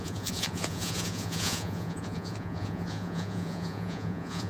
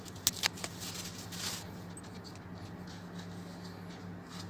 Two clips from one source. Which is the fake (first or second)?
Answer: first